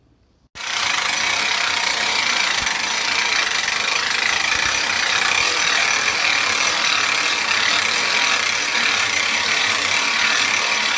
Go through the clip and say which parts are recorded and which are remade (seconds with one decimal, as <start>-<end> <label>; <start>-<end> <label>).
0.0-0.6 recorded; 0.6-1.8 remade; 1.8-8.7 recorded; 8.7-9.6 remade; 9.6-11.0 recorded